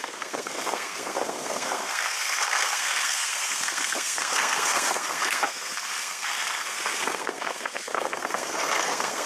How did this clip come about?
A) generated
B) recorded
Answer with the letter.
A